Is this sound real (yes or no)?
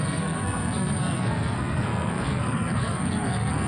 no